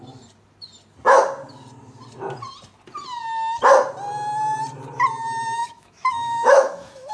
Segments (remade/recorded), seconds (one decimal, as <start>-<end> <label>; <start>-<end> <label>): 0.0-5.6 recorded; 5.6-7.1 remade